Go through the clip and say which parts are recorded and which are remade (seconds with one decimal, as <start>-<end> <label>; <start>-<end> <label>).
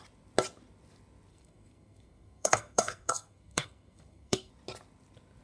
0.0-1.3 recorded; 1.3-4.5 remade; 4.5-5.4 recorded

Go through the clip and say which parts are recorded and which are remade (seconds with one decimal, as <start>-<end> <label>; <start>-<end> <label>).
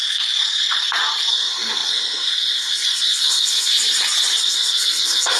0.0-1.3 recorded; 1.3-3.7 remade; 3.7-4.4 recorded; 4.4-5.4 remade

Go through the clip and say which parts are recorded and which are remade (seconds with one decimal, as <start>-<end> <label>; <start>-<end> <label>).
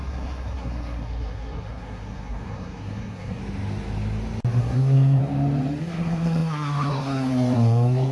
0.0-3.4 remade; 3.4-4.6 recorded; 4.6-5.2 remade; 5.2-5.8 recorded; 5.8-8.1 remade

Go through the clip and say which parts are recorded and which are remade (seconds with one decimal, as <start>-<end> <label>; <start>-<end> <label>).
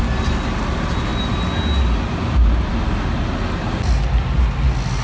0.0-5.0 recorded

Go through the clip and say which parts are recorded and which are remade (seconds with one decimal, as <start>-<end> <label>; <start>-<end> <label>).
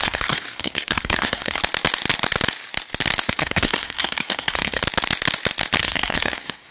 0.0-1.6 remade; 1.6-3.3 recorded; 3.3-4.8 remade; 4.8-5.8 recorded; 5.8-6.7 remade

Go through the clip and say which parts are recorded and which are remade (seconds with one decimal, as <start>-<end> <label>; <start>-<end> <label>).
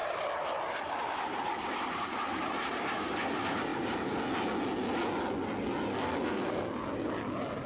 0.0-5.9 recorded; 5.9-6.7 remade; 6.7-7.7 recorded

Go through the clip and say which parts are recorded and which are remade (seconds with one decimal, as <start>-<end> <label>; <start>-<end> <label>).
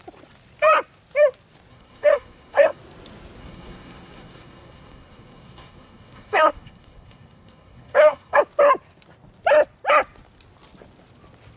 0.0-1.7 recorded; 1.7-2.8 remade; 2.8-3.4 recorded; 3.4-8.4 remade; 8.4-11.6 recorded